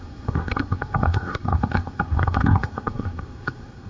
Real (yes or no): no